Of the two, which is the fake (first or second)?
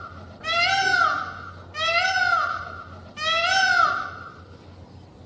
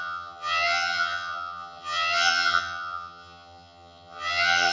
second